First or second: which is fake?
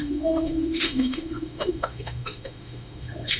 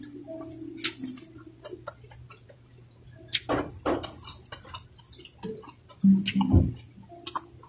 first